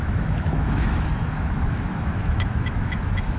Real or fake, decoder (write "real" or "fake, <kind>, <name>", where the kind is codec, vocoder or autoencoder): fake, autoencoder, DAC-VAE